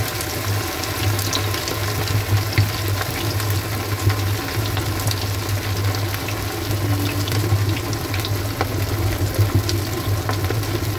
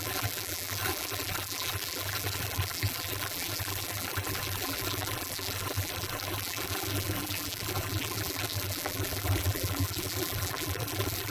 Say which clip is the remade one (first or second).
second